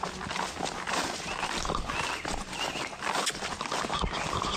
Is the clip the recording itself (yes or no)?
yes